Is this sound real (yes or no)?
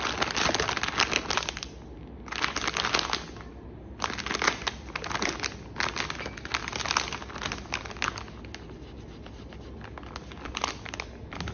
yes